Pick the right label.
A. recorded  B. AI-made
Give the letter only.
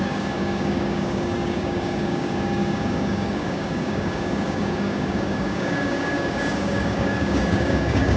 B